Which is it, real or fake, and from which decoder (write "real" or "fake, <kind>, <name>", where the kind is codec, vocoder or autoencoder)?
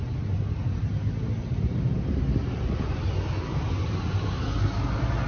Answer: real